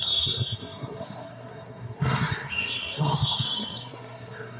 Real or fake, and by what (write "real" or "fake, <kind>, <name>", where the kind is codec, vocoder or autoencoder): fake, codec, SNAC